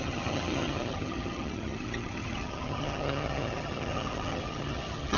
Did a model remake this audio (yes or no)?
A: yes